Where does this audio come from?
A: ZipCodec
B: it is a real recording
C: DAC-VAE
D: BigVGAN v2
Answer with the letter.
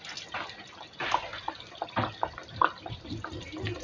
B